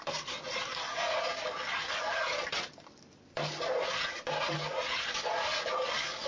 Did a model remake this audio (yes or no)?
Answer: no